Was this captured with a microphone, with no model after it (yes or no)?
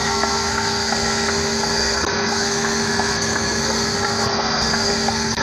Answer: no